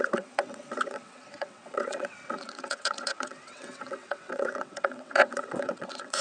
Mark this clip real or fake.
fake